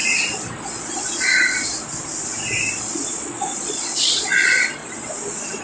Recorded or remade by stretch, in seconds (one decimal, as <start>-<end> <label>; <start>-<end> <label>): 0.0-0.9 recorded; 0.9-1.3 remade; 1.3-2.8 recorded; 2.8-4.8 remade; 4.8-5.6 recorded